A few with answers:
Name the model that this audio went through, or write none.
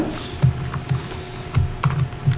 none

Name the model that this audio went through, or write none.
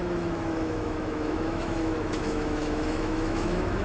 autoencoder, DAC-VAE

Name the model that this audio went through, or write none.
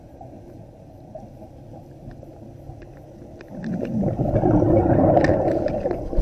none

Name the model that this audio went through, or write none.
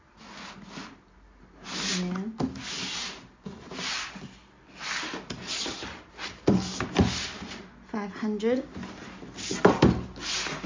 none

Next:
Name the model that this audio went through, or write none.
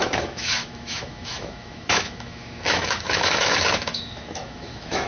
autoencoder, DAC-VAE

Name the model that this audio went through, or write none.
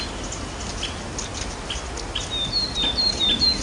none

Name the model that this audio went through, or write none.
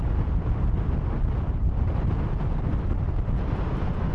none